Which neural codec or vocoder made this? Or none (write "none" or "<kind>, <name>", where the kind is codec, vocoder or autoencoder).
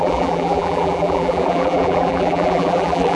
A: vocoder, BigVGAN v2